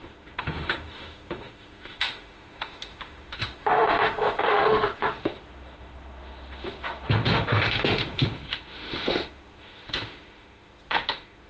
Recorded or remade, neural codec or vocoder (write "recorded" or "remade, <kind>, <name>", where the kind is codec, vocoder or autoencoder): remade, autoencoder, DAC-VAE